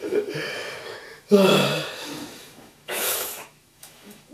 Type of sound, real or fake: fake